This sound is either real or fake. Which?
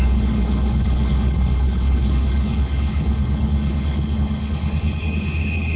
fake